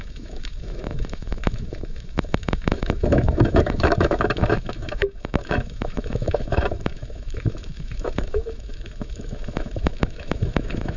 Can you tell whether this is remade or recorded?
remade